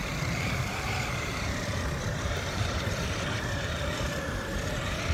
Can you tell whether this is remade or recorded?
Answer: remade